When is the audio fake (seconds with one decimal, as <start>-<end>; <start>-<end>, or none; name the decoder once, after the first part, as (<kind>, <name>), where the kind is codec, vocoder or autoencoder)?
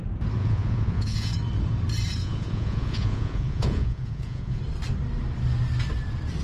0.4-1.3 (vocoder, Vocos); 2.2-4.6